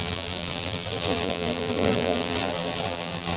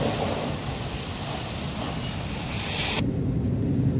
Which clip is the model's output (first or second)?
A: first